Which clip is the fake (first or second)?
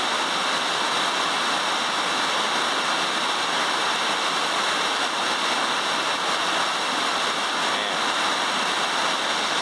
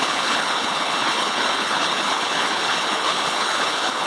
second